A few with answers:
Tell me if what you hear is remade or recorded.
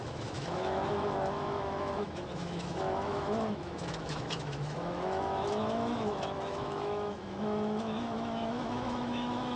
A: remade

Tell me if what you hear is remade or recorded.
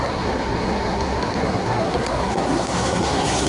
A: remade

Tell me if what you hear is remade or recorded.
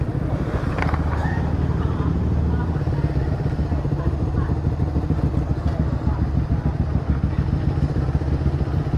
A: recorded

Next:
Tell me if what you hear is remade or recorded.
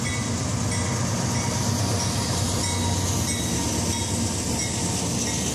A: recorded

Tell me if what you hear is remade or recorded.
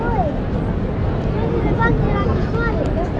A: recorded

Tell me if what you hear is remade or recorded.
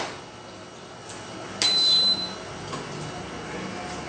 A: recorded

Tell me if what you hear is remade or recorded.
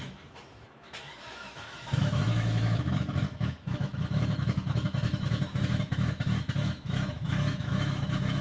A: remade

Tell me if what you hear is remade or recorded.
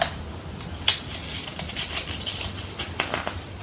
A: recorded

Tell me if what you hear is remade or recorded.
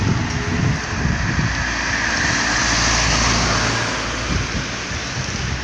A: recorded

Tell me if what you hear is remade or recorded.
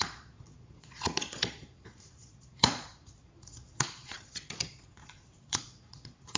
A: remade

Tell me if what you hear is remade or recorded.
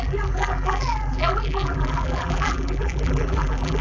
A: remade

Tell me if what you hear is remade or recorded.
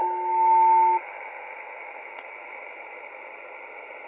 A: recorded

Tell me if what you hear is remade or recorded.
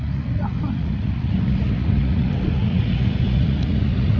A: remade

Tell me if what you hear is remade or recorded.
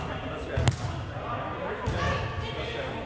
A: recorded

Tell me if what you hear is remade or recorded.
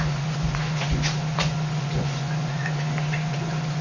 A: remade